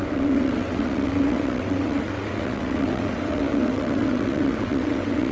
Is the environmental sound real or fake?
fake